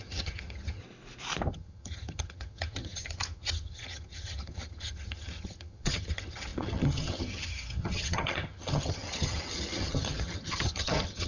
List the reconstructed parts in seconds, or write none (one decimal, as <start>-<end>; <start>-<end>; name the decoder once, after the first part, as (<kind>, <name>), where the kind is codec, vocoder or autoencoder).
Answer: 0.0-0.8 (vocoder, HiFi-GAN); 1.5-11.3